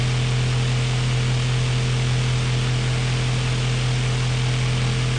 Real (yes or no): yes